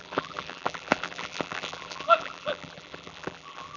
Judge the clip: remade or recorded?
remade